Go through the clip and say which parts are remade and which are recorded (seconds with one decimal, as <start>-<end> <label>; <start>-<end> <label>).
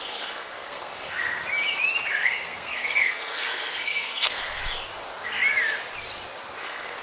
0.0-1.4 remade; 1.4-2.1 recorded; 2.1-4.6 remade; 4.6-6.6 recorded; 6.6-7.0 remade